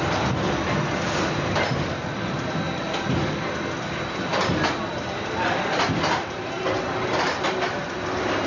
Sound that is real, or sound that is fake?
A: real